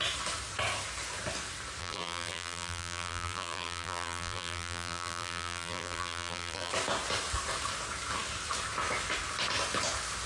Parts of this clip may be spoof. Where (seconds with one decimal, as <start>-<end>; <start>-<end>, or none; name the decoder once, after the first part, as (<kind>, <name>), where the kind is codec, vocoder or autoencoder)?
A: 1.8-6.7 (vocoder, BigVGAN v2)